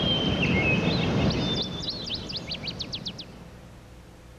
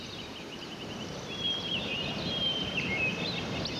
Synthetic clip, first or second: second